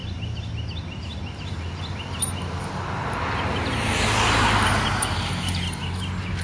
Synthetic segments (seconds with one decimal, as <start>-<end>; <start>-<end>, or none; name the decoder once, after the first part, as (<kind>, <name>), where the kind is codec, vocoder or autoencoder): none